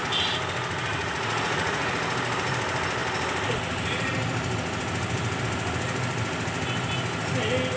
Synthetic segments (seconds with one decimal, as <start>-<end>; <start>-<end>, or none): 1.0-1.9